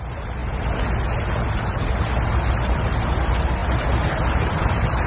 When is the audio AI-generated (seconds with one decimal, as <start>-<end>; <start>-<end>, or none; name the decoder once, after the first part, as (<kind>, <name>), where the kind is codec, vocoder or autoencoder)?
none